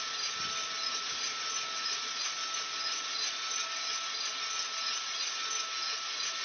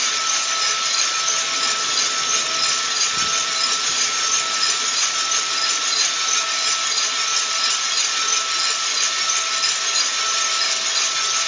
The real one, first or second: first